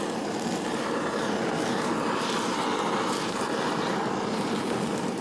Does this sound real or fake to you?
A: real